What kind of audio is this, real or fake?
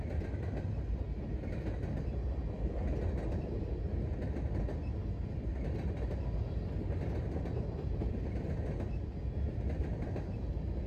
real